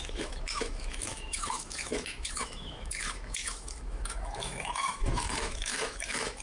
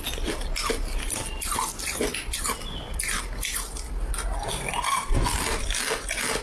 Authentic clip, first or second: second